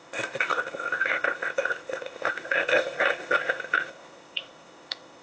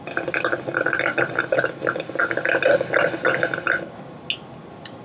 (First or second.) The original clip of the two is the second